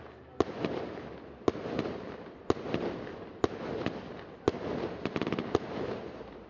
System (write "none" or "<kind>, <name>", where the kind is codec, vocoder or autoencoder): none